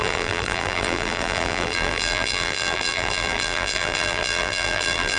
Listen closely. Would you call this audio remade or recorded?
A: remade